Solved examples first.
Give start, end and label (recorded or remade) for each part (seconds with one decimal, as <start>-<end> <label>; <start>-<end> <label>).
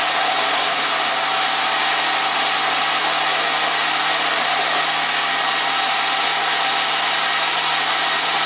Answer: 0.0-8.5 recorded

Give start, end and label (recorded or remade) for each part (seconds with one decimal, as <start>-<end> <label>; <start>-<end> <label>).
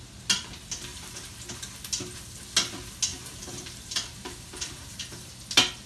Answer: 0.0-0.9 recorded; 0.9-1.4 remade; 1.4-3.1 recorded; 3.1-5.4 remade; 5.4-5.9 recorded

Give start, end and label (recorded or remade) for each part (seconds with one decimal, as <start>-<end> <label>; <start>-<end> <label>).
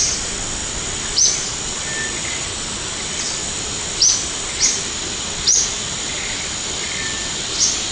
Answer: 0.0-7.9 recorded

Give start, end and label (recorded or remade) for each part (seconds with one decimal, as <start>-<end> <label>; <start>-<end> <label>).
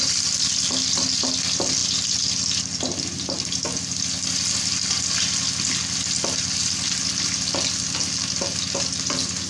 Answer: 0.0-9.5 recorded